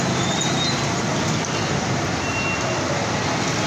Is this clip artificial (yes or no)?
no